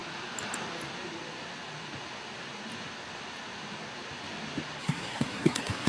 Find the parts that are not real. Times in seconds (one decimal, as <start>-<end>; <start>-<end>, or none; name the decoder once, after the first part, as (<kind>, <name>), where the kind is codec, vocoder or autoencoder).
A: 4.8-5.9 (codec, SNAC)